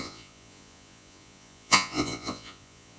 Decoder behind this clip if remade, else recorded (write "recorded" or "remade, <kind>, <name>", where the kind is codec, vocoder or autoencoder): remade, vocoder, Vocos